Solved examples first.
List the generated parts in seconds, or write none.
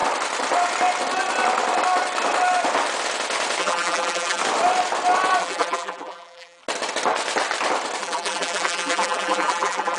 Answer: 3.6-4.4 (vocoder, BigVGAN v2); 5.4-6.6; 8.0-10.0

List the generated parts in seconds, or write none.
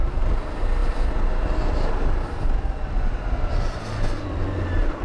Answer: none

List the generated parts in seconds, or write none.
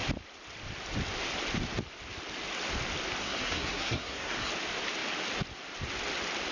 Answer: 3.2-4.5 (codec, SNAC)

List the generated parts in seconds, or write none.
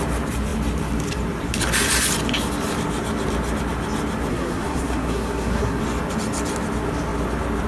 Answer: 4.3-5.8 (codec, SNAC)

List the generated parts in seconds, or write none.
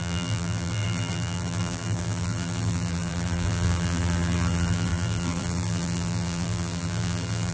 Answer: 0.0-7.5 (vocoder, BigVGAN v2)